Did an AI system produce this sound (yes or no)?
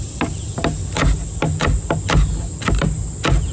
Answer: no